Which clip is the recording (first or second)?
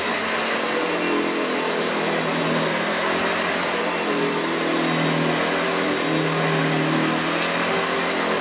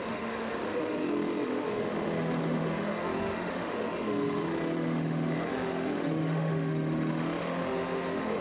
first